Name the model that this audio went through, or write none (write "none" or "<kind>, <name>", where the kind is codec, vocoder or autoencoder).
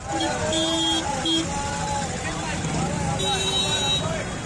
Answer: none